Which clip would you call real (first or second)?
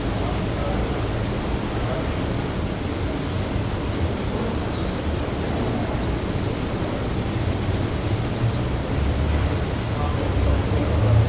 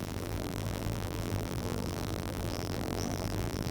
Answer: first